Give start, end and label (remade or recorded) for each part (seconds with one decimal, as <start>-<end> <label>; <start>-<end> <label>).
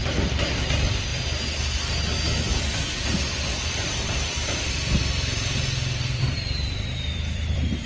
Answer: 0.0-1.1 remade; 1.1-2.8 recorded; 2.8-5.0 remade; 5.0-5.6 recorded; 5.6-7.9 remade